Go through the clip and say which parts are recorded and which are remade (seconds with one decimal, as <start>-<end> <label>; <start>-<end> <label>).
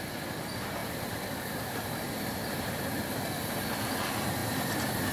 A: 0.0-0.8 recorded; 0.8-3.9 remade; 3.9-5.1 recorded